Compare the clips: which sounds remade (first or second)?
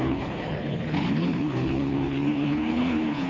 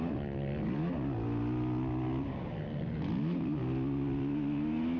first